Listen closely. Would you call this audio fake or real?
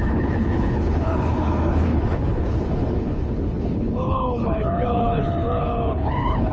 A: fake